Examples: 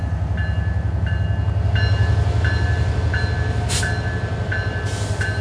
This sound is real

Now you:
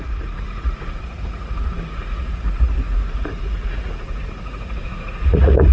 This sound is fake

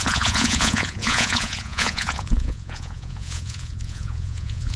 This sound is fake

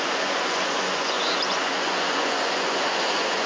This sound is fake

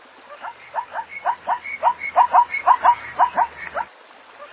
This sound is real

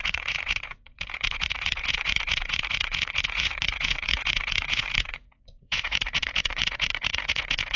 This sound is fake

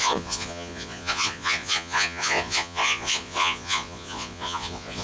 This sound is fake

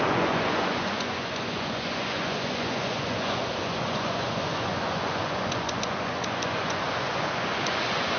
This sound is fake